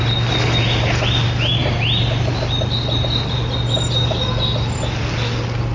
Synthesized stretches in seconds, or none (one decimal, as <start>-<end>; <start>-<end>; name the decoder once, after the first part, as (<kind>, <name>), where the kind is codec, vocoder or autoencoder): none